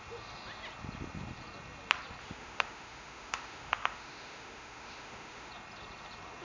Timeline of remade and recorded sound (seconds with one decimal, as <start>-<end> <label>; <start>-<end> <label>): 0.0-2.2 recorded; 2.2-5.5 remade; 5.5-6.4 recorded